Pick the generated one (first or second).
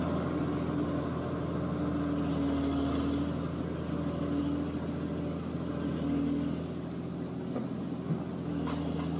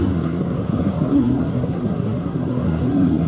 second